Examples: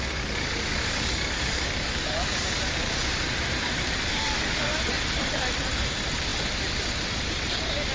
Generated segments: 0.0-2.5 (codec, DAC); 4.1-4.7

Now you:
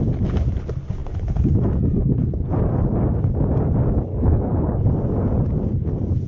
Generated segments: 2.0-2.5 (codec, HILCodec); 4.1-4.9

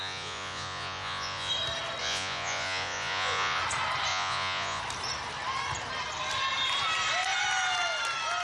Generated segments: 0.0-1.5 (vocoder, Vocos); 2.0-3.6; 4.1-4.8

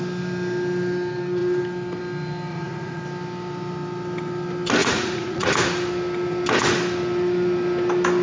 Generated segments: 2.5-3.0 (vocoder, Vocos); 4.8-5.5

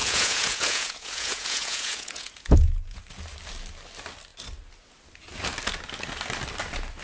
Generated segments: 0.0-3.0 (vocoder, Vocos)